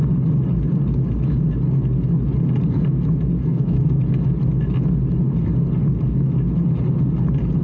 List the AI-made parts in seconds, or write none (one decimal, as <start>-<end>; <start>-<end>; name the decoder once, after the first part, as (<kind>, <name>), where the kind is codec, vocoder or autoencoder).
3.4-4.0 (codec, SNAC)